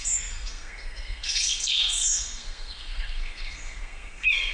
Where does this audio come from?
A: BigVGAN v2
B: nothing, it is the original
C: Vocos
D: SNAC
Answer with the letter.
D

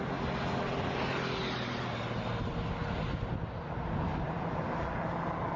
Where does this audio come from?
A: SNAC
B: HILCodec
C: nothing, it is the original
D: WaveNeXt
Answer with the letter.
C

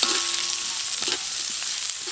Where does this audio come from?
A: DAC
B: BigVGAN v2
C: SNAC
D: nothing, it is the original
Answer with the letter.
D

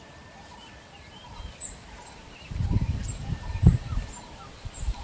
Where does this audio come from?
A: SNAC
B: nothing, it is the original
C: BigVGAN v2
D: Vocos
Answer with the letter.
C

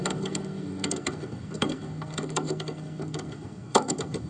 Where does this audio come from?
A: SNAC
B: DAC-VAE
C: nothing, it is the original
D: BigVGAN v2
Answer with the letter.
A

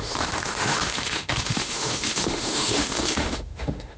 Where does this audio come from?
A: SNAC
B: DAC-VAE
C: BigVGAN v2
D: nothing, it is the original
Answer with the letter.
B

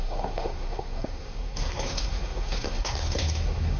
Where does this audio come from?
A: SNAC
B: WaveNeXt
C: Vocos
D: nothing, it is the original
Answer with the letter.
A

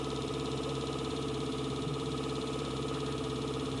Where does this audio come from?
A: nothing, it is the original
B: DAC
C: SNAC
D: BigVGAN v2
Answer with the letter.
D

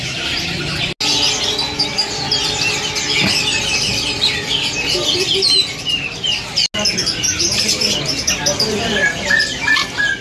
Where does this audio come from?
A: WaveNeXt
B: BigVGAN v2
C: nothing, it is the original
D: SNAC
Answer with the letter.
C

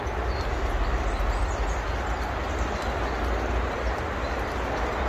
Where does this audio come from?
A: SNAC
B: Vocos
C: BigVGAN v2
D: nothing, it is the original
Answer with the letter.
D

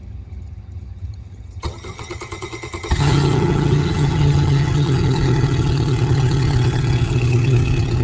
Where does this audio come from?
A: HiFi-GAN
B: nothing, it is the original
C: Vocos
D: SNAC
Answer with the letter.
A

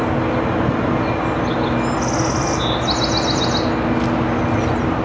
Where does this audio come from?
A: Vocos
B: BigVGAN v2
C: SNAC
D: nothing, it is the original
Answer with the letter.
D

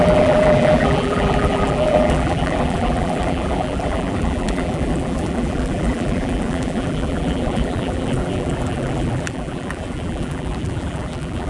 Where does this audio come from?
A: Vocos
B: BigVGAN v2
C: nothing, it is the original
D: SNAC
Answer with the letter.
B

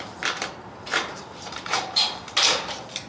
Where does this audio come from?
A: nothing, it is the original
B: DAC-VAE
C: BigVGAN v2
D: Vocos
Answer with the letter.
C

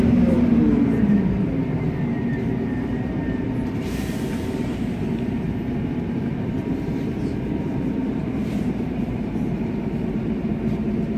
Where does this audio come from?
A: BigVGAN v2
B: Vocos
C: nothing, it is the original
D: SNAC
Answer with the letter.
A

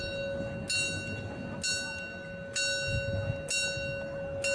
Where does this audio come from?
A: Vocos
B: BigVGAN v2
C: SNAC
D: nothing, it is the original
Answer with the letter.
D